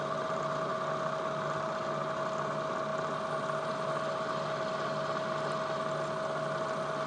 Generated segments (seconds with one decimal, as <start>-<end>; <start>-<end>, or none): none